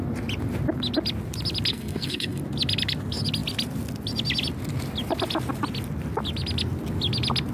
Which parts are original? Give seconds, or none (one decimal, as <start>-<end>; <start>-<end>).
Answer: 0.0-1.7; 2.4-7.5